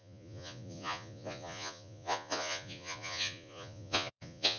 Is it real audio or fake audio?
fake